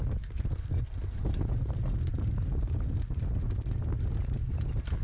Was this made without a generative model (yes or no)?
yes